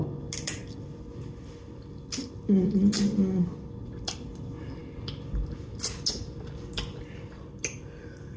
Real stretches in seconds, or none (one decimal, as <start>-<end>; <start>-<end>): 0.0-8.4